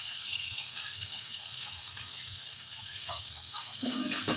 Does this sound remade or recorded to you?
remade